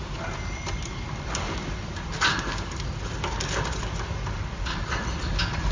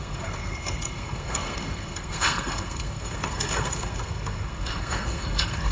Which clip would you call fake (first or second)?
second